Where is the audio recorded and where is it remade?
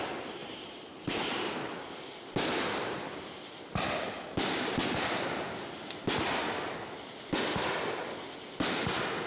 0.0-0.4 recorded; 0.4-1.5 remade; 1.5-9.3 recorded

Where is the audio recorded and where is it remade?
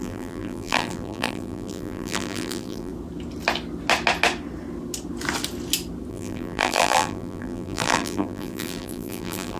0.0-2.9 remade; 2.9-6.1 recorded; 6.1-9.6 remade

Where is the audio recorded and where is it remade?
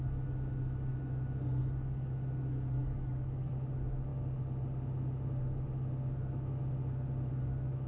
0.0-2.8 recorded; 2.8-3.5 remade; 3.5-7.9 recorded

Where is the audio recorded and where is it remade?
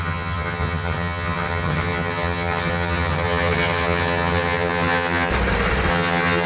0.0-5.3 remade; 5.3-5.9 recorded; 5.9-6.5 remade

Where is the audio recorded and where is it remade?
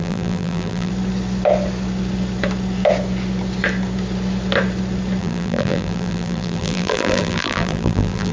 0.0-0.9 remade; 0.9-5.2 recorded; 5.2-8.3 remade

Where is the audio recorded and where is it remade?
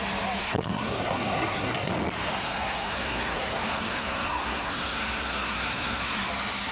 0.0-0.4 recorded; 0.4-1.9 remade; 1.9-2.3 recorded; 2.3-6.3 remade; 6.3-6.7 recorded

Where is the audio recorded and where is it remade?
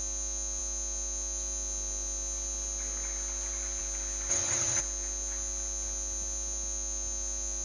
0.0-4.3 recorded; 4.3-4.8 remade; 4.8-7.6 recorded